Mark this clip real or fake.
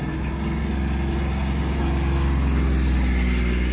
real